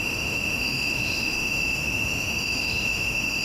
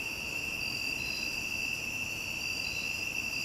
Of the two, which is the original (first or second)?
second